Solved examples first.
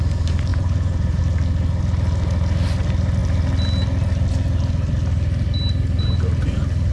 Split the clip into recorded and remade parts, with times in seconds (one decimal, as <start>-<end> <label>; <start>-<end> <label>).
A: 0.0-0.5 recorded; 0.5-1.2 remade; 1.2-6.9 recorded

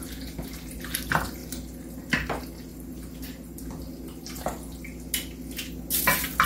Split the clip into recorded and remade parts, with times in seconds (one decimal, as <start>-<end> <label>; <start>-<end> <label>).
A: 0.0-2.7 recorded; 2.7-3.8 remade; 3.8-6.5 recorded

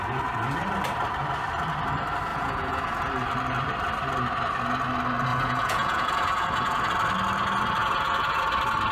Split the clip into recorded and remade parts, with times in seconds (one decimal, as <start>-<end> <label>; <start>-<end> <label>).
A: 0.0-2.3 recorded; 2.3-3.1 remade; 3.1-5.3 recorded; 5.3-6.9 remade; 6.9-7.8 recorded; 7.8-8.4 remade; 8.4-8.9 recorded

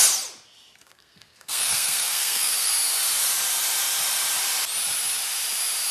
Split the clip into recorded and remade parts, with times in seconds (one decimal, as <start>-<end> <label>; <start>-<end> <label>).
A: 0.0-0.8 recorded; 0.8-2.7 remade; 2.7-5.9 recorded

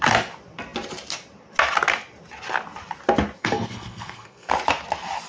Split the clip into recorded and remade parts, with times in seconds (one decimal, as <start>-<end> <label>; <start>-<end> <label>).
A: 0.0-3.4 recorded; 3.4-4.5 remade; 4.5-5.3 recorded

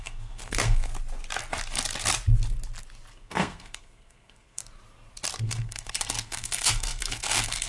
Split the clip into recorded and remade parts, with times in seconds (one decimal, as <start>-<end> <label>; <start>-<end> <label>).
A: 0.0-0.9 remade; 0.9-3.1 recorded; 3.1-4.6 remade; 4.6-5.4 recorded; 5.4-7.7 remade